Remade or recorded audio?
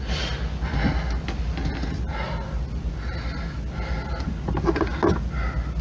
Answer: recorded